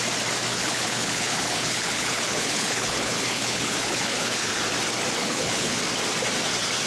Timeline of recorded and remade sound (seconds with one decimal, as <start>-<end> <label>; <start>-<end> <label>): 0.0-0.5 recorded; 0.5-4.6 remade; 4.6-5.2 recorded; 5.2-5.8 remade; 5.8-6.9 recorded